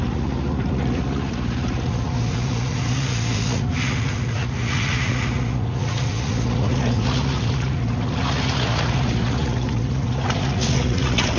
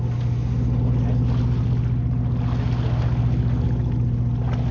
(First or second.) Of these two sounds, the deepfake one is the first